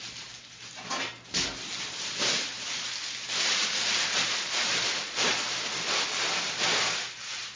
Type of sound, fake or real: real